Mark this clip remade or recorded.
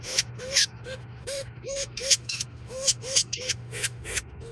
remade